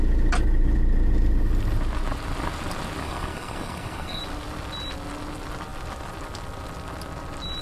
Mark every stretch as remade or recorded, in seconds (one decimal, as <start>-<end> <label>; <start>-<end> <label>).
0.0-3.0 recorded; 3.0-4.2 remade; 4.2-7.6 recorded